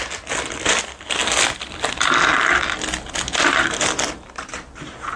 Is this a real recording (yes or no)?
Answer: yes